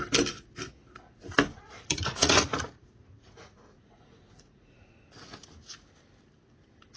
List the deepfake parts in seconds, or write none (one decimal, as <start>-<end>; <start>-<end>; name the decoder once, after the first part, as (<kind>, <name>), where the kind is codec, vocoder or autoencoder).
1.5-4.9 (vocoder, Vocos)